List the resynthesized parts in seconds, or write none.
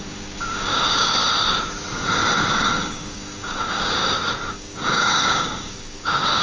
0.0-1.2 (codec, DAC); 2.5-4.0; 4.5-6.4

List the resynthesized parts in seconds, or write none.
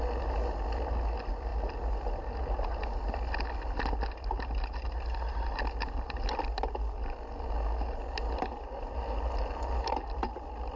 none